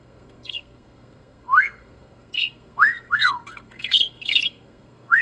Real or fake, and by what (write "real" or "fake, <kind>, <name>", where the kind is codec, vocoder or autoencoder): fake, codec, SNAC